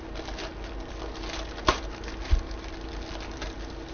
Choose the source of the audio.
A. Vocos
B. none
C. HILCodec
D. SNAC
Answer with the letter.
B